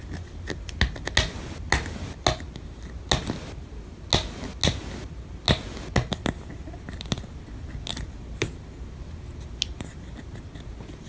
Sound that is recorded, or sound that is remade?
recorded